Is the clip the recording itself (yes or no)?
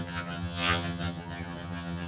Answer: no